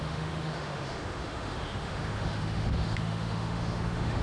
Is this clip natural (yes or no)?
no